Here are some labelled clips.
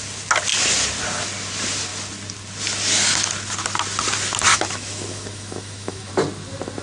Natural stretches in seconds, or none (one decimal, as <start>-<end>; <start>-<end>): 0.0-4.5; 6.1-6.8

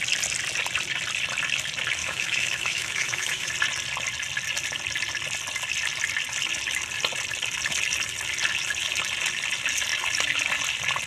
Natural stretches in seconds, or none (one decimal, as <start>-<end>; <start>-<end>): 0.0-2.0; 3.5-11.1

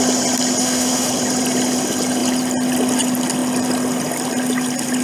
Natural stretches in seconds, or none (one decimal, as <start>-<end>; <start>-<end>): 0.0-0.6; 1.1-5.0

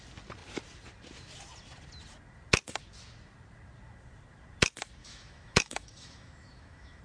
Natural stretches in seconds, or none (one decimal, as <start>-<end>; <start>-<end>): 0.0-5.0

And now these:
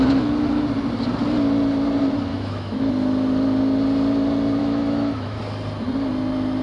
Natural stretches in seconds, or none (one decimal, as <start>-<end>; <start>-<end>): 0.0-2.3; 2.9-4.6; 5.4-6.6

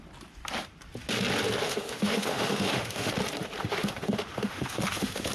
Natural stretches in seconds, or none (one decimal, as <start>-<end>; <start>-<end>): 0.0-1.6; 3.1-3.6

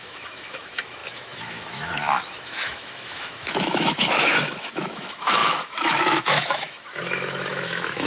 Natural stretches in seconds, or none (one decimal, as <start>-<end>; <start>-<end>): none